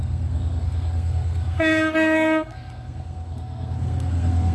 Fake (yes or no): yes